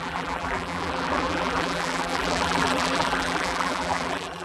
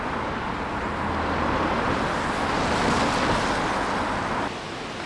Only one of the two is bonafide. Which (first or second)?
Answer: second